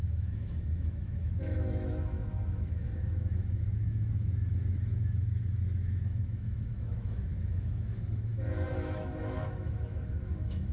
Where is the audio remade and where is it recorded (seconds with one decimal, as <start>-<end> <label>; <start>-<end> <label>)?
0.0-10.7 remade